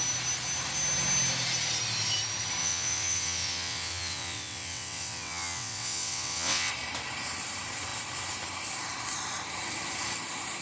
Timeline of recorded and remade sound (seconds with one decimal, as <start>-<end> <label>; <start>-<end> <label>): 0.0-2.6 recorded; 2.6-6.7 remade; 6.7-10.6 recorded